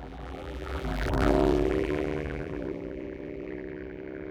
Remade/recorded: remade